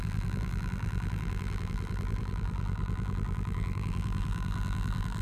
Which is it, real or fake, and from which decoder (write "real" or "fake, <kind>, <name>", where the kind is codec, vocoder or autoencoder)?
fake, vocoder, BigVGAN v2